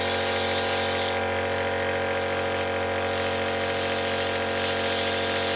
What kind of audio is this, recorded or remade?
recorded